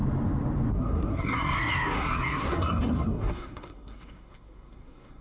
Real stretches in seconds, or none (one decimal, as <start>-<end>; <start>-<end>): 0.0-0.7